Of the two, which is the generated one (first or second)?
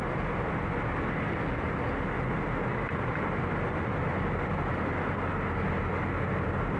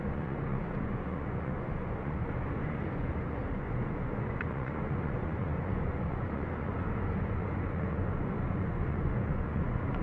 second